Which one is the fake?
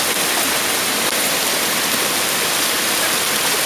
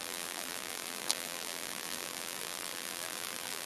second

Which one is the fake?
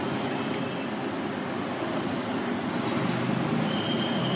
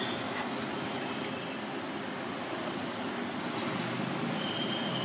second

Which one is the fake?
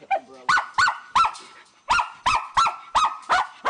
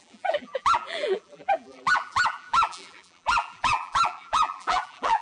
second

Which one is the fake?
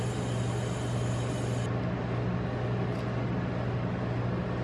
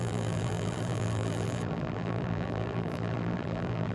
second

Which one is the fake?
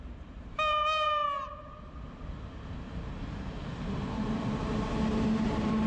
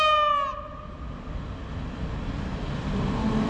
first